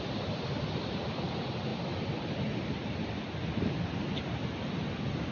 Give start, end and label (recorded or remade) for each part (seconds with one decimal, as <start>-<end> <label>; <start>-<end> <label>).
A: 0.0-5.3 recorded